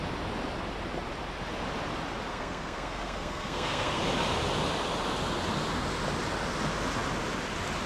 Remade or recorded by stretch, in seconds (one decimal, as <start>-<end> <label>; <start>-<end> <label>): 0.0-2.3 recorded; 2.3-4.0 remade; 4.0-7.9 recorded